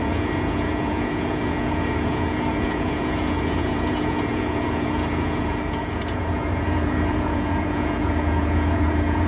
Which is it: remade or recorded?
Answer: remade